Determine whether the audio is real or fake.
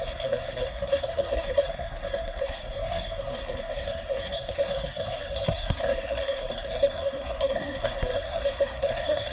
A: fake